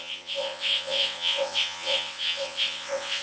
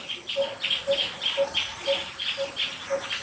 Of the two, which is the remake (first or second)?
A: first